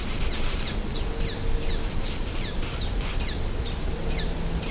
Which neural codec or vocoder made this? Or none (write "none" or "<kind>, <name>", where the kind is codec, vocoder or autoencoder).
vocoder, BigVGAN v2